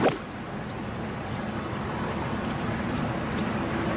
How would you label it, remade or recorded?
recorded